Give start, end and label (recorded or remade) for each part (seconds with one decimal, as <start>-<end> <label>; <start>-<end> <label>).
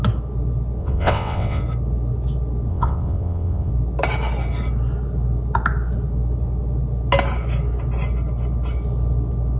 0.0-0.8 recorded; 0.8-1.6 remade; 1.6-2.7 recorded; 2.7-3.7 remade; 3.7-9.6 recorded